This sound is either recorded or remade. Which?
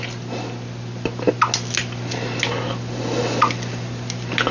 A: recorded